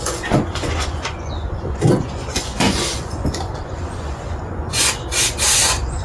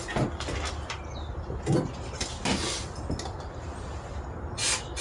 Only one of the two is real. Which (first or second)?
second